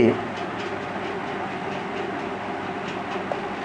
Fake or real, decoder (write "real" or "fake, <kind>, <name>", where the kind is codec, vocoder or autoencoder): real